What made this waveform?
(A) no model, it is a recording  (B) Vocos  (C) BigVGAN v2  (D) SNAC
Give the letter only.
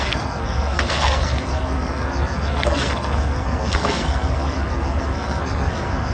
D